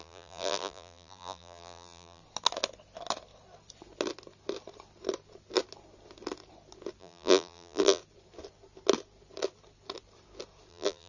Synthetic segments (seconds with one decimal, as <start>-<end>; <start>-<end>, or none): 0.0-2.2; 7.0-8.0; 10.7-11.1